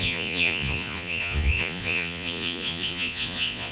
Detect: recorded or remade remade